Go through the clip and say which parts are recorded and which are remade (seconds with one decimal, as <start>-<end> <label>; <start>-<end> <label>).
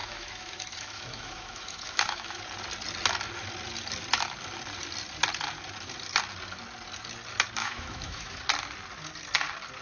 0.0-2.4 remade; 2.4-7.6 recorded; 7.6-8.4 remade; 8.4-9.8 recorded